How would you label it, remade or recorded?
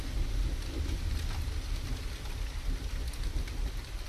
recorded